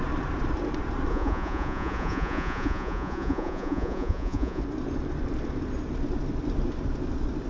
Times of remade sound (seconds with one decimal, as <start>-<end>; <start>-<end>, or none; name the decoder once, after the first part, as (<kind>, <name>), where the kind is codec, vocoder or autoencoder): 1.1-4.6 (vocoder, Vocos)